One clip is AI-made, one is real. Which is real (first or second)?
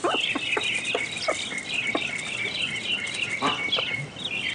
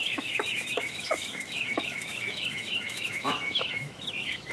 first